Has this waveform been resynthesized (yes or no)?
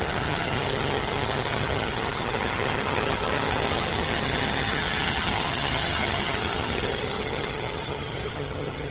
yes